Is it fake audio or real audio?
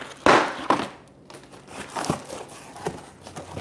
real